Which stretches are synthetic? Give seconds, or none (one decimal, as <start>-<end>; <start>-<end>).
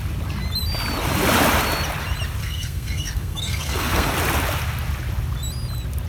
2.4-4.1